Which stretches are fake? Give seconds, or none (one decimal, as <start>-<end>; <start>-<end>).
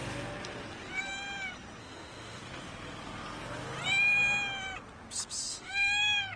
1.8-2.4; 5.5-6.0